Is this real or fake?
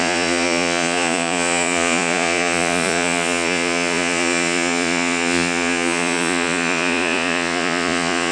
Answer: fake